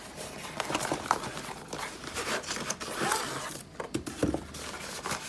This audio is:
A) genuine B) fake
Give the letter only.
A